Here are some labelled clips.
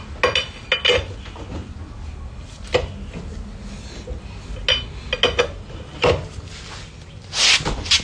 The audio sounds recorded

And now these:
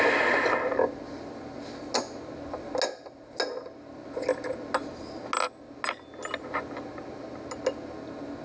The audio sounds recorded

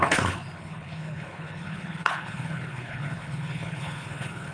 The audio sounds remade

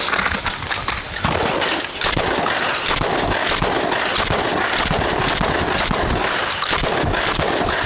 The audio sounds recorded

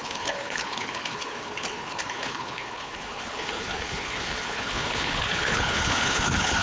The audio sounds remade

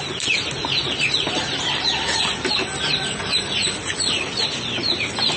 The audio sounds recorded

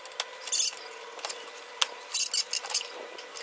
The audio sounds recorded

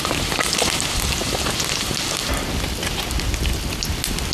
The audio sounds recorded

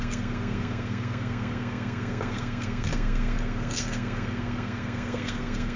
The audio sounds remade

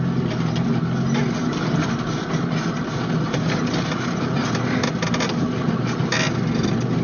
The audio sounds recorded